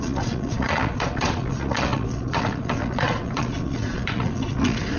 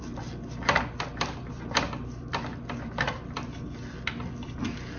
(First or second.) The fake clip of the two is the first